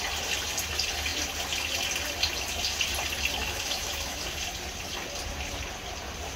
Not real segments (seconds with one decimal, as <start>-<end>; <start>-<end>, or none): 3.4-4.2